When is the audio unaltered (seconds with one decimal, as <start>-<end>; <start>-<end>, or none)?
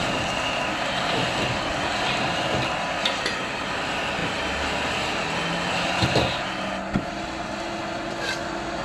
0.0-8.8